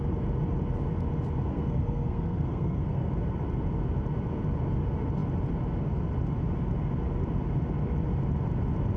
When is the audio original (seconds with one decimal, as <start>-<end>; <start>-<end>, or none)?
0.0-1.5; 3.1-9.0